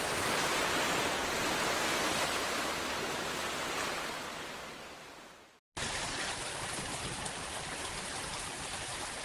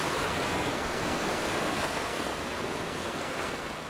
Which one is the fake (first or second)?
second